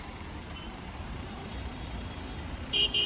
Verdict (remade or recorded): remade